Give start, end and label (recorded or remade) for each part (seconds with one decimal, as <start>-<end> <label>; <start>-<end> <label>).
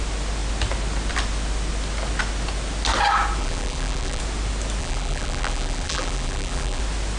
0.0-3.4 recorded; 3.4-4.2 remade; 4.2-4.8 recorded; 4.8-6.8 remade; 6.8-7.2 recorded